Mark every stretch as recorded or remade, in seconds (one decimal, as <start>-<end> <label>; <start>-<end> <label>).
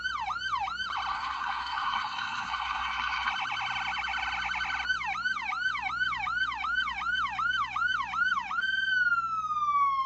0.0-1.1 recorded; 1.1-3.3 remade; 3.3-10.1 recorded